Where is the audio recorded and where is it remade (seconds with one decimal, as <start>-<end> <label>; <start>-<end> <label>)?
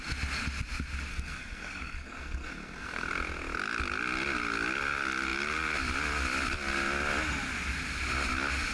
0.0-1.1 recorded; 1.1-3.1 remade; 3.1-8.7 recorded